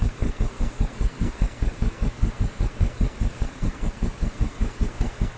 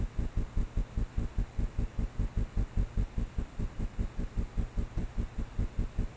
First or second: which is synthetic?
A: first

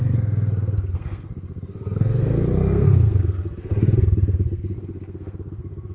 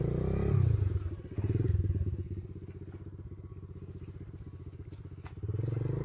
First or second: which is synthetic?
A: first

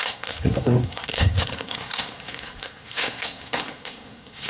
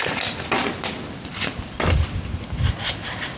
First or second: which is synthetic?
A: first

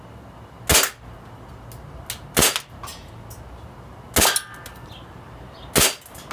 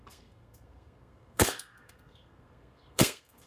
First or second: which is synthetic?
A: second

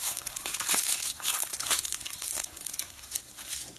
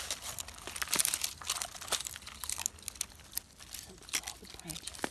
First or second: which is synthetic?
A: first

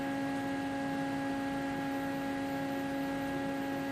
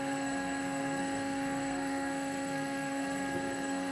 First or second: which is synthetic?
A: second